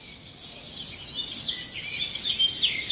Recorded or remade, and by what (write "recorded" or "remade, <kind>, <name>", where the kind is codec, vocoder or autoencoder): recorded